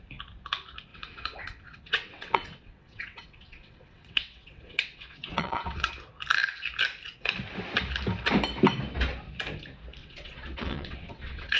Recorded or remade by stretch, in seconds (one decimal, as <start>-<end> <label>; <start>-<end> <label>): 0.0-0.9 recorded; 0.9-5.9 remade; 5.9-10.0 recorded; 10.0-11.6 remade